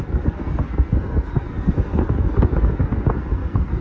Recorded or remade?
remade